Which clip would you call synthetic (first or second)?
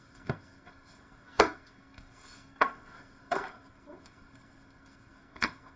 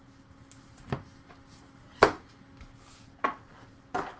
first